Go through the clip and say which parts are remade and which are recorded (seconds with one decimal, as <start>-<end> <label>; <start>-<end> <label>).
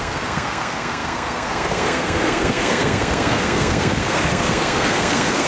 0.0-5.5 remade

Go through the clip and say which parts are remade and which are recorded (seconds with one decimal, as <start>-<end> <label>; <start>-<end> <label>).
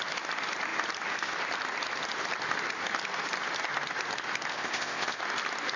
0.0-4.5 recorded; 4.5-5.2 remade; 5.2-5.8 recorded